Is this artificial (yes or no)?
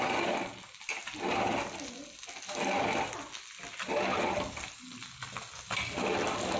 no